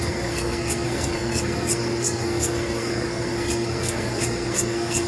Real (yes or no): no